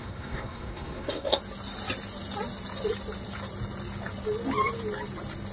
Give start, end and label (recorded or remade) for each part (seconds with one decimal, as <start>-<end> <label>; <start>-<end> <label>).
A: 0.0-1.4 remade; 1.4-5.5 recorded